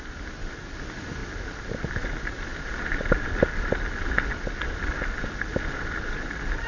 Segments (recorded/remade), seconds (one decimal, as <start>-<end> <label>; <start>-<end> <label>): 0.0-6.7 recorded